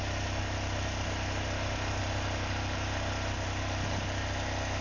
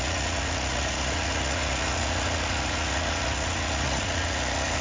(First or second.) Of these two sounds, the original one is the first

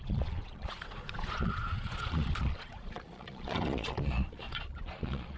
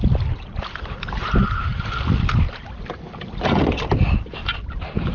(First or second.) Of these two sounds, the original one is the second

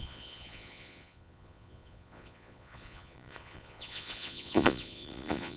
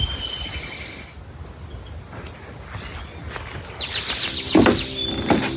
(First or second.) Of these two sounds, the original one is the second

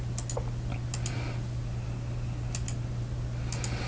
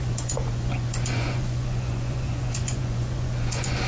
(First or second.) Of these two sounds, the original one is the first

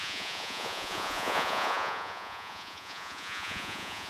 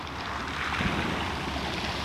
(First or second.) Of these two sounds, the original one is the second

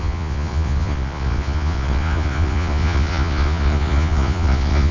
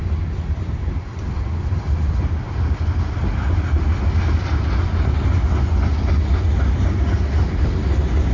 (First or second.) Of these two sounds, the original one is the second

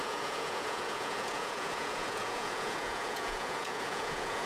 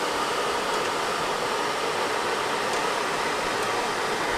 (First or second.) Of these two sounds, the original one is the second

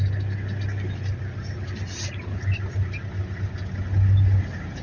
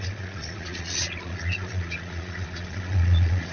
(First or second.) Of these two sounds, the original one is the first